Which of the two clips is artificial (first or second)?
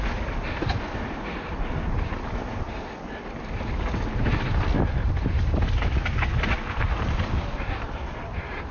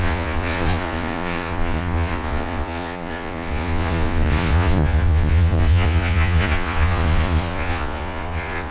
second